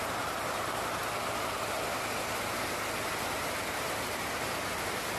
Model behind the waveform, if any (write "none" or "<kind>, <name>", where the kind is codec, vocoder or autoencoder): none